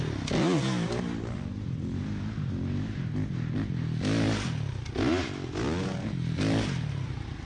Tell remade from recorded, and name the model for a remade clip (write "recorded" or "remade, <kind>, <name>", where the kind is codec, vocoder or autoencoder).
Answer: recorded